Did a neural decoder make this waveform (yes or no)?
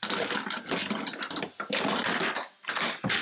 no